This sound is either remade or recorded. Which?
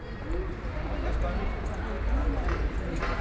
recorded